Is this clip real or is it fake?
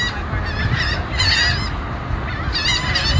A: real